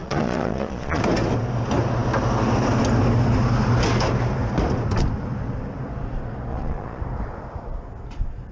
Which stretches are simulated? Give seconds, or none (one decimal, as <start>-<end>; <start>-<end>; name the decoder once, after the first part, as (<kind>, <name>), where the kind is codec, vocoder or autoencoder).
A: 0.0-1.0 (vocoder, Vocos); 6.5-7.0